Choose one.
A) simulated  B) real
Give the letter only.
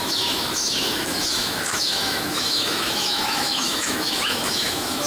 A